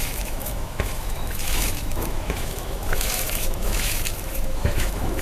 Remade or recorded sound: remade